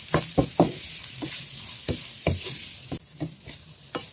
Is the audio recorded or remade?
recorded